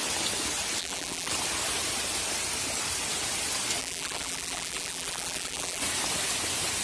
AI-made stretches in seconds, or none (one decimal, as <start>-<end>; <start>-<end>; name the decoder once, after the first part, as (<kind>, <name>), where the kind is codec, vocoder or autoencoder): 0.8-1.3 (vocoder, BigVGAN v2); 3.8-5.8